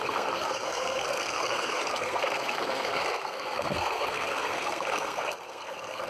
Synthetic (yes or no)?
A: yes